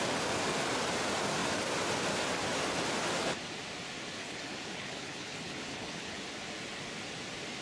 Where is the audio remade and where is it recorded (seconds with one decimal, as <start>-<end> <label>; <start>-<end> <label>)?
0.0-4.2 recorded; 4.2-6.2 remade; 6.2-7.6 recorded